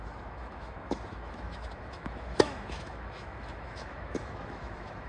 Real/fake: fake